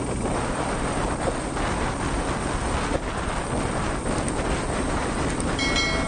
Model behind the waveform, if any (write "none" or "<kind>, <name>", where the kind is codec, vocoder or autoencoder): none